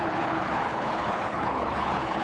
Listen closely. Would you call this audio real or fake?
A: fake